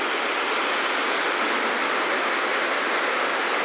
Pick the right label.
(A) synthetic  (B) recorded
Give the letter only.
B